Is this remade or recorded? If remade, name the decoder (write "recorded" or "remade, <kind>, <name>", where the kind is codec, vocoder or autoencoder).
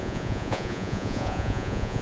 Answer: remade, vocoder, Vocos